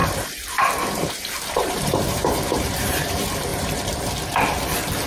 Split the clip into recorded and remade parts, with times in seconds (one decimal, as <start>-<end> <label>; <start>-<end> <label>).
0.0-3.1 remade; 3.1-3.5 recorded; 3.5-4.1 remade; 4.1-5.1 recorded

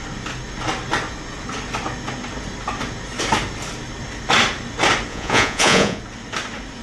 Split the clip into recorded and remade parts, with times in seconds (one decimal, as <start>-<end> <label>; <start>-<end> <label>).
0.0-5.1 recorded; 5.1-6.0 remade; 6.0-6.8 recorded

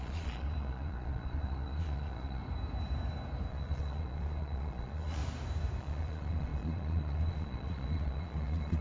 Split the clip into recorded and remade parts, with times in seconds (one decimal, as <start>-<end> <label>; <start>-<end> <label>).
0.0-2.4 remade; 2.4-3.5 recorded; 3.5-5.2 remade; 5.2-5.8 recorded; 5.8-8.8 remade